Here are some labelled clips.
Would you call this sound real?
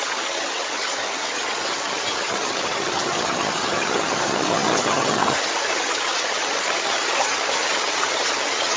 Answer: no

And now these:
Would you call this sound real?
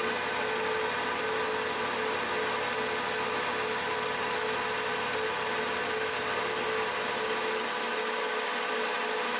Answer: yes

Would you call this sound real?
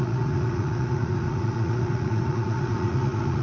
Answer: no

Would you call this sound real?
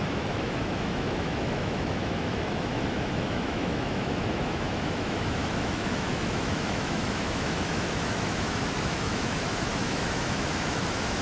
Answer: no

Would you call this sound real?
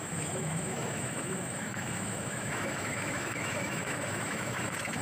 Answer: no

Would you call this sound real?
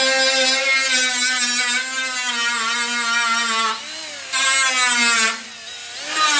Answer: yes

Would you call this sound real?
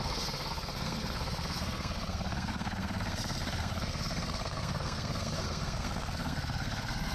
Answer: no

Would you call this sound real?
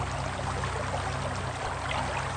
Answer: yes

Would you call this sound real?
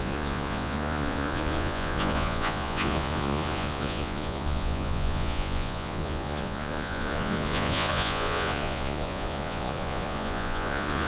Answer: no